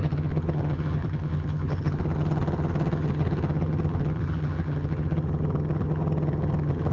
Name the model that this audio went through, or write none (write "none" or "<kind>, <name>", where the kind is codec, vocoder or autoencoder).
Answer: vocoder, HiFi-GAN